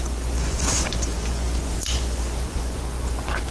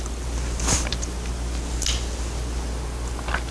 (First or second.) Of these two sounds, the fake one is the first